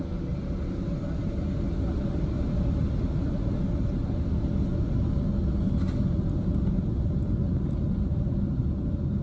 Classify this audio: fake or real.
real